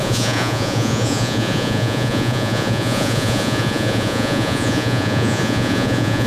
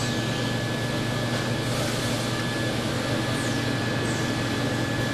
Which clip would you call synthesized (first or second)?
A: first